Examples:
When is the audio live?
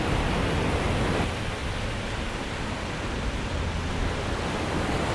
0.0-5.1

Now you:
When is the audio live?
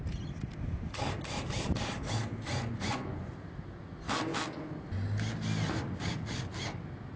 0.0-2.5; 3.3-7.2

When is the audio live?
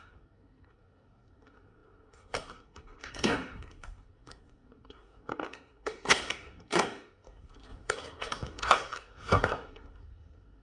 none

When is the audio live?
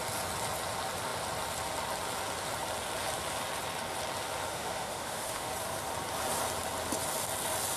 0.0-4.5; 5.5-7.8